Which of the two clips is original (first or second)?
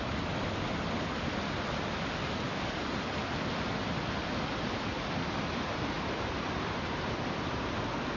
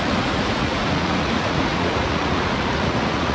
first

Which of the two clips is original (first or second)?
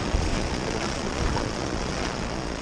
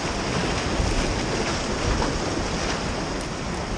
second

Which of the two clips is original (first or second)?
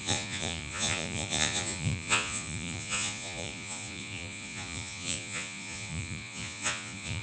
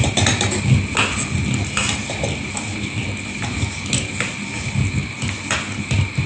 second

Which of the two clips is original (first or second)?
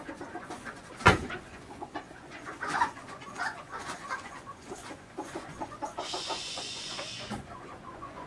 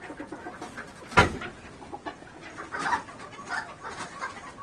second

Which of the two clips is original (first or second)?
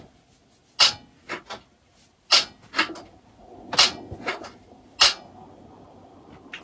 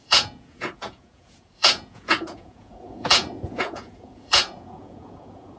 first